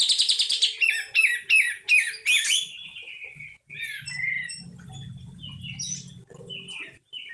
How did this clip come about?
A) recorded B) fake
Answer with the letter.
A